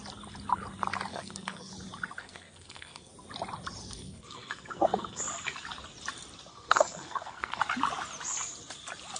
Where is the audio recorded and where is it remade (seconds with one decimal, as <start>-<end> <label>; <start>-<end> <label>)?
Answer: 0.0-1.1 recorded; 1.1-1.7 remade; 1.7-2.2 recorded; 2.2-3.1 remade; 3.1-3.8 recorded; 3.8-5.2 remade; 5.2-6.5 recorded; 6.5-7.6 remade; 7.6-9.2 recorded